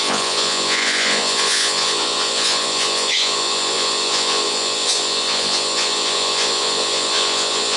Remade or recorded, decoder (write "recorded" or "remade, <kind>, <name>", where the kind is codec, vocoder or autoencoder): remade, vocoder, Vocos